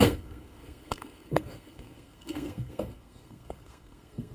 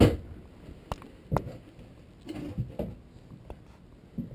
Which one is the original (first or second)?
second